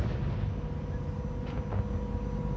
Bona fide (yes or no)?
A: yes